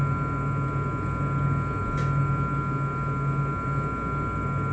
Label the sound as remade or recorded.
recorded